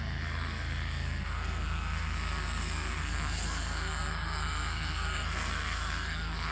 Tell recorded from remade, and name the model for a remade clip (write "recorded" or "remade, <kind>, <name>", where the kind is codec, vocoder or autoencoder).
remade, codec, SNAC